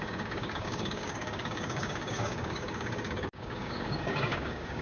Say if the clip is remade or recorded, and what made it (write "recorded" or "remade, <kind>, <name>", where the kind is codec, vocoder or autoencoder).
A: remade, codec, DAC